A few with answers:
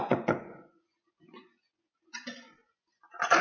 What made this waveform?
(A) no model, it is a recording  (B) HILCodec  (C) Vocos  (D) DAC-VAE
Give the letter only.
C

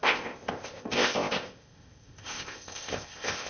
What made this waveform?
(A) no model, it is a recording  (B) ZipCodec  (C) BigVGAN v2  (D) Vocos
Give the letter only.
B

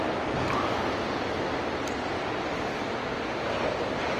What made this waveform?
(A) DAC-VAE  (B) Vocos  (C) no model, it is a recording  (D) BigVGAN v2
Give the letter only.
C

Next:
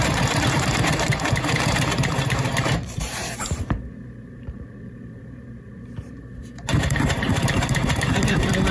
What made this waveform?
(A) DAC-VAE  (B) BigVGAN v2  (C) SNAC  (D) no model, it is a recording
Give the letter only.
B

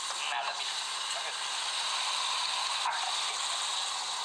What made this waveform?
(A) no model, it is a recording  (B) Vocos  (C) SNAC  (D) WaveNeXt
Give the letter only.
A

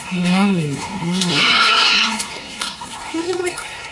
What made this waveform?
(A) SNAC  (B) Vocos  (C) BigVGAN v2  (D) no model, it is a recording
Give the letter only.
A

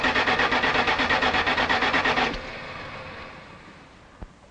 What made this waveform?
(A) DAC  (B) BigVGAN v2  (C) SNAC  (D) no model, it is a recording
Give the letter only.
D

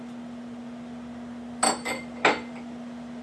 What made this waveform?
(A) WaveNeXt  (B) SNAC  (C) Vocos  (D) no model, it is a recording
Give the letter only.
D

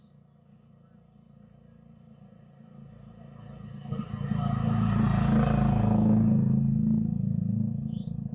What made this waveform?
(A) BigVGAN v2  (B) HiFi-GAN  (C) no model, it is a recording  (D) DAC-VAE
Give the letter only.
C